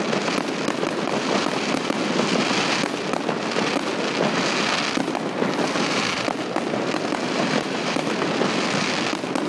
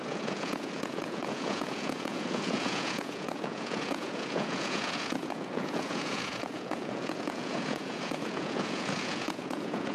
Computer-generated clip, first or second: second